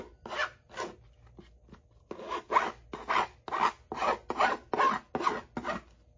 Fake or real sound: real